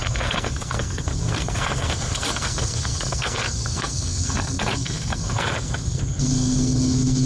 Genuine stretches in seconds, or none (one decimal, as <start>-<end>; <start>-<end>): none